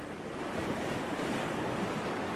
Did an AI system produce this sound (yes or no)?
yes